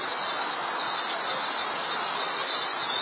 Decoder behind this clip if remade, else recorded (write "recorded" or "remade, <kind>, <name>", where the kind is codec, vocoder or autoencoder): recorded